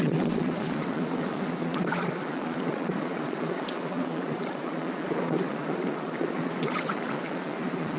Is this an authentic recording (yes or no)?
no